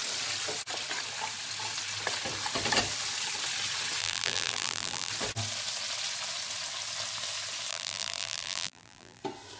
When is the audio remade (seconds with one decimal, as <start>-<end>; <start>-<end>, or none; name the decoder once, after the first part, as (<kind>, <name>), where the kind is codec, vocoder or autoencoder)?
4.0-5.1 (vocoder, BigVGAN v2); 7.7-9.2